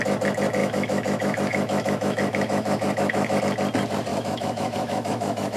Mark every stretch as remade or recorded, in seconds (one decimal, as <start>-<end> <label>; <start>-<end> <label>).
0.0-0.6 recorded; 0.6-3.4 remade; 3.4-4.1 recorded; 4.1-5.6 remade